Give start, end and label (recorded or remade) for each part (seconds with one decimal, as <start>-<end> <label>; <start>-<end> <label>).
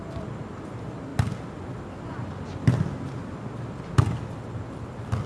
0.0-5.3 recorded